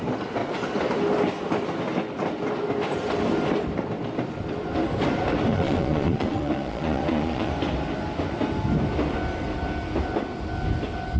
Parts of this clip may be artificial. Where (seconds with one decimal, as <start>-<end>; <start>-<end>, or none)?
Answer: 5.5-7.5